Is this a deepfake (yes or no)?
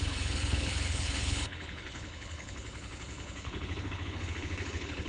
yes